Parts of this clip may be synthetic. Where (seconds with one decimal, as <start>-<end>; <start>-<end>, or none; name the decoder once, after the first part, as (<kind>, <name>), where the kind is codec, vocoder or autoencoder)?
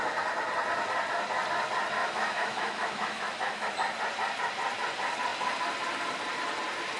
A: 2.0-3.7 (autoencoder, DAC-VAE)